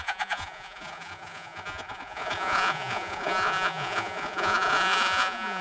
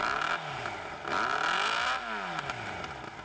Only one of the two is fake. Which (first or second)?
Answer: first